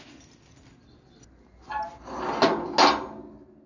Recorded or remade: recorded